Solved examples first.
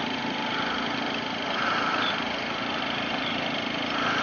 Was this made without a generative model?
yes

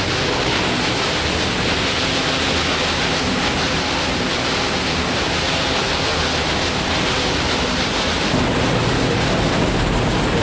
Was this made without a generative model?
yes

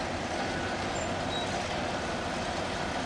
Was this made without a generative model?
yes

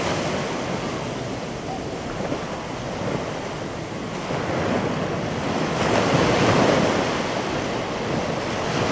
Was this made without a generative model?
yes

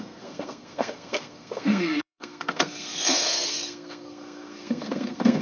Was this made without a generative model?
no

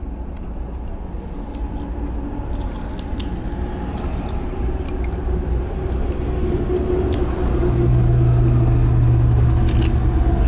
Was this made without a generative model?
yes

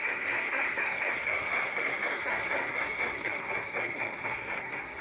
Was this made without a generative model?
no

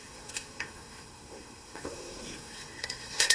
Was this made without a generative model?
no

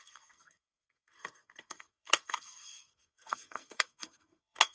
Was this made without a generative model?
no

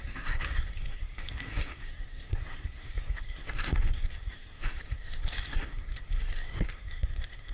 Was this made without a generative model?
no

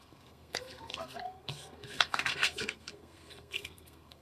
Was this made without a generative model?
no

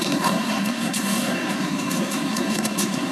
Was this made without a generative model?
no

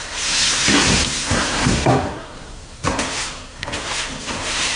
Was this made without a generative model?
no